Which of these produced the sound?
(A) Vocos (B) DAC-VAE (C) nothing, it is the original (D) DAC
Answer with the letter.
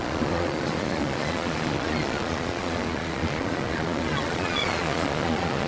A